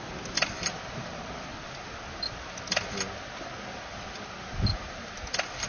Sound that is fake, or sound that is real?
real